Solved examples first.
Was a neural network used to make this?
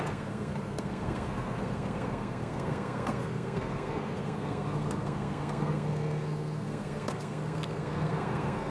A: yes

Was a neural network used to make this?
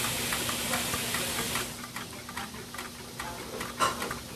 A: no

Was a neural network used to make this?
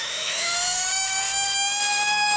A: yes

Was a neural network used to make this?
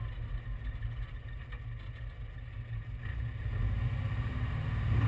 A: no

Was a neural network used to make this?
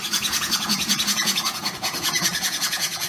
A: yes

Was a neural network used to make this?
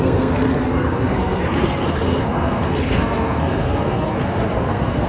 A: yes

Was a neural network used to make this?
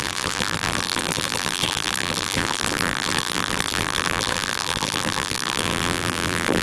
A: yes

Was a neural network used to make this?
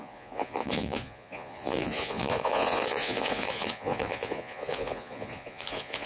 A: yes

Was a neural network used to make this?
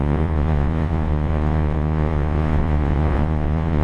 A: yes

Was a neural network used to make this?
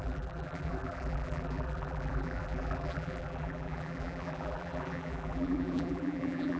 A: yes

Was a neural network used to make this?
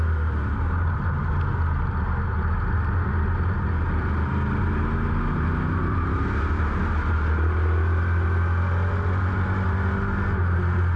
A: no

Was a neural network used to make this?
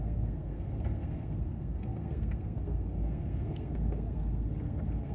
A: yes